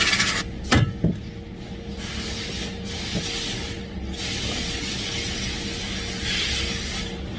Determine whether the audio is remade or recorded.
recorded